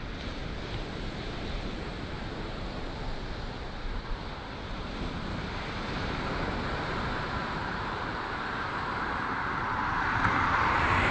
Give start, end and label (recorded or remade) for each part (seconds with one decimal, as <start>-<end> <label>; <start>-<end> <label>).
0.0-0.4 remade; 0.4-0.9 recorded; 0.9-1.9 remade; 1.9-6.7 recorded; 6.7-11.1 remade